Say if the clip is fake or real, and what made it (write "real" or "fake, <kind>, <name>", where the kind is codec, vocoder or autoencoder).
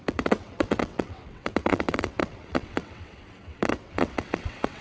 fake, vocoder, WaveNeXt